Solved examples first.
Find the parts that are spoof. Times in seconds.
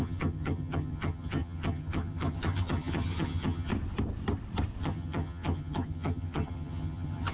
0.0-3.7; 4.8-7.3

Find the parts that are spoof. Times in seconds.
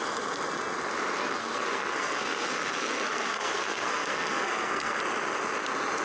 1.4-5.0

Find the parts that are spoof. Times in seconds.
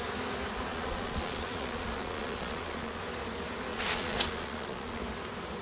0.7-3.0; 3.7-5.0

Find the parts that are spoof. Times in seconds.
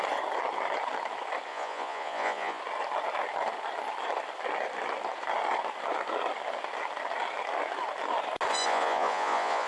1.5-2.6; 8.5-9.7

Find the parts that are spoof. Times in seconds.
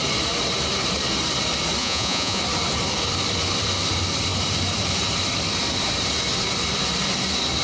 1.8-2.4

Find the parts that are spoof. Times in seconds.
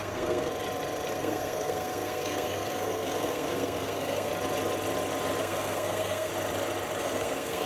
0.0-0.5; 1.1-4.3; 5.4-6.3; 7.0-7.7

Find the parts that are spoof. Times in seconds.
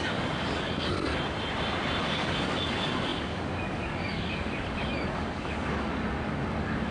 0.0-1.1; 2.0-6.9